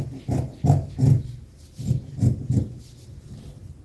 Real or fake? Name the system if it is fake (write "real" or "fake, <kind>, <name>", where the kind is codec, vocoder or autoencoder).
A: real